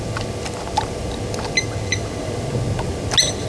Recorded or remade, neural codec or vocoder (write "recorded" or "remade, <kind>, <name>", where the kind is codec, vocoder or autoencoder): recorded